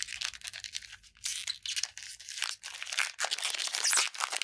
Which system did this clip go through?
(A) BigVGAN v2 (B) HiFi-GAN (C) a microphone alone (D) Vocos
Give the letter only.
C